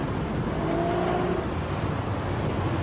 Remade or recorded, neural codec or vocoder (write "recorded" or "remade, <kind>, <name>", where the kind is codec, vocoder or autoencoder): recorded